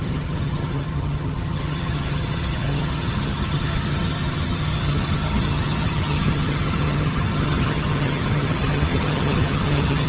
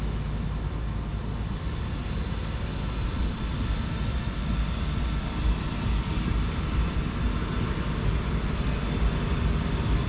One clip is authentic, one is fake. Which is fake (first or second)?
first